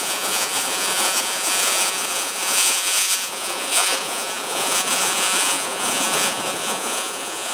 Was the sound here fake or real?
fake